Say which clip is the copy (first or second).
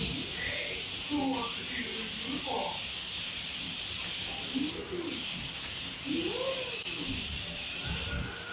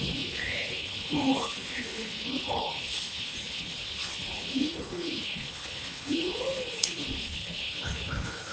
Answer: second